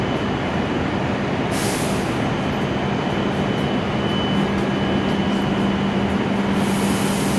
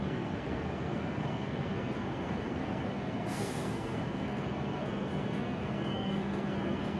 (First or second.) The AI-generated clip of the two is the second